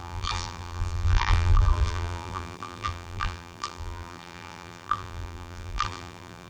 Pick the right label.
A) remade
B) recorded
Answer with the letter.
A